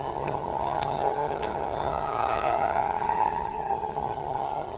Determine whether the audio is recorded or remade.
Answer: remade